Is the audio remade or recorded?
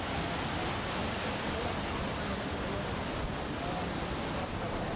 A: recorded